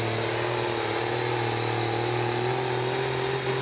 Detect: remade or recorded recorded